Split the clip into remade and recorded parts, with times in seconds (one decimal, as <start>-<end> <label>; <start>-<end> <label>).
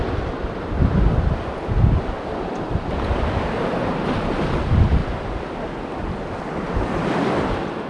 0.0-7.9 recorded